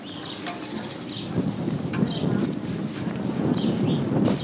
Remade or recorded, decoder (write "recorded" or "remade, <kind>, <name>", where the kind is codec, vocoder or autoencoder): recorded